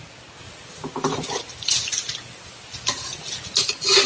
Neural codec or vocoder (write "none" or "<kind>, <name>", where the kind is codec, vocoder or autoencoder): none